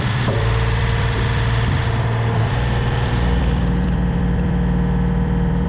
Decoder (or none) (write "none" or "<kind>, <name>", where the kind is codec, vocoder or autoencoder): vocoder, BigVGAN v2